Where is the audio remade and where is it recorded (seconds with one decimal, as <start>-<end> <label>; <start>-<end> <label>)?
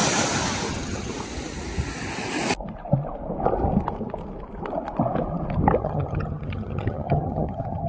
0.0-0.7 recorded; 0.7-1.1 remade; 1.1-5.8 recorded; 5.8-7.9 remade